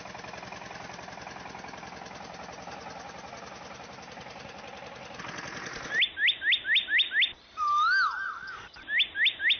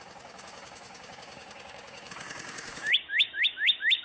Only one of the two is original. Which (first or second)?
first